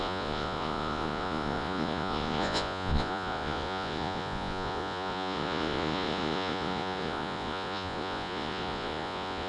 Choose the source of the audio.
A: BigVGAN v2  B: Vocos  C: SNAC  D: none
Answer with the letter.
B